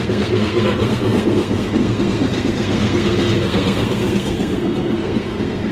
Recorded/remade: remade